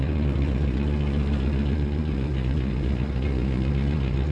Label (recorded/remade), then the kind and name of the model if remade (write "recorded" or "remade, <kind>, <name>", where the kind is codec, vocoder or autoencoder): remade, vocoder, Vocos